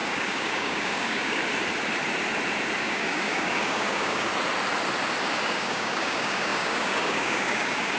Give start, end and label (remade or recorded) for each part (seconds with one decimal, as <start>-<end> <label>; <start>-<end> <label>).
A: 0.0-1.4 remade; 1.4-2.8 recorded; 2.8-4.3 remade; 4.3-5.2 recorded; 5.2-8.0 remade